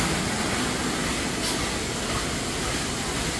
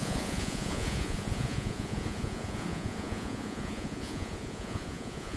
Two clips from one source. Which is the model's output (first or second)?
second